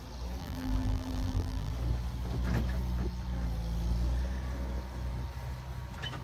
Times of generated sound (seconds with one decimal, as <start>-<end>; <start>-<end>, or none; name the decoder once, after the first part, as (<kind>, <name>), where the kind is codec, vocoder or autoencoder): 0.4-1.7 (vocoder, BigVGAN v2)